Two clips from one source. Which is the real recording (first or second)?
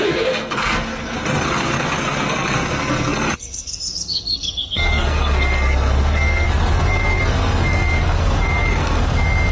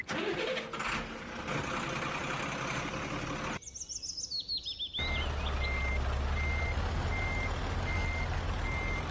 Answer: second